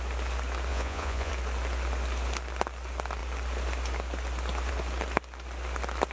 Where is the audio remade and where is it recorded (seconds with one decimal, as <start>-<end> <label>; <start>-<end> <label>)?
0.0-0.7 recorded; 0.7-1.3 remade; 1.3-6.1 recorded